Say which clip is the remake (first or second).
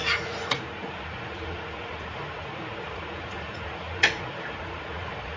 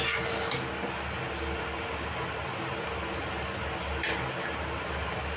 first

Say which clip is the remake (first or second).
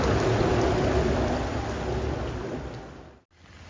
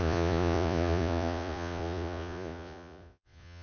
second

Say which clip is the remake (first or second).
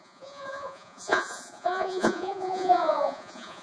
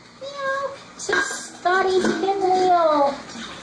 first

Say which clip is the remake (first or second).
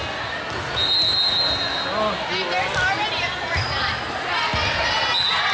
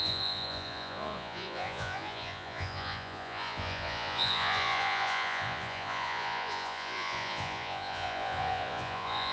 second